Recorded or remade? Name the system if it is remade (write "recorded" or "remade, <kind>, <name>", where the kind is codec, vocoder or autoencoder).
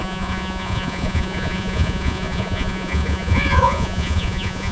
remade, vocoder, Vocos